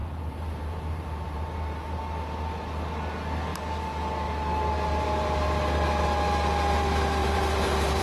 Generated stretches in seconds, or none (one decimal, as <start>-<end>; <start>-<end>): 0.0-2.0; 7.2-8.0